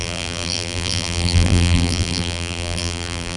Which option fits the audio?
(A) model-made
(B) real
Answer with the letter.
A